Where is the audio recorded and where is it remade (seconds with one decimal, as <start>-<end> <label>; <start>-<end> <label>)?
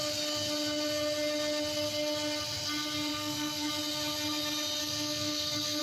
0.0-3.1 recorded; 3.1-3.7 remade; 3.7-4.8 recorded; 4.8-5.8 remade